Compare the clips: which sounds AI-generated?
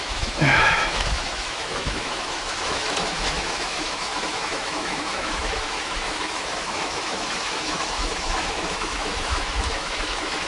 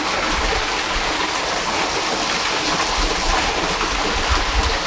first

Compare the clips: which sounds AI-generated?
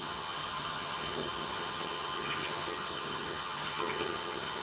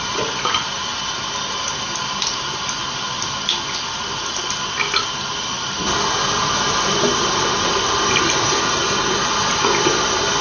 first